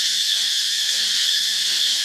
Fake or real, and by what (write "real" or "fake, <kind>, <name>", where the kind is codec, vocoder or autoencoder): fake, codec, SNAC